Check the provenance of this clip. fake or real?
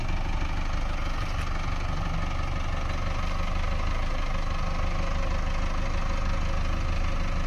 real